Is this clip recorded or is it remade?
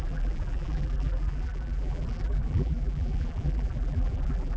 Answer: remade